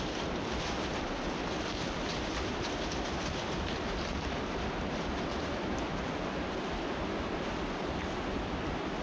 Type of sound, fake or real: real